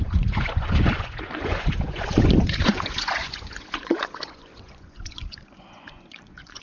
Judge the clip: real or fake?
fake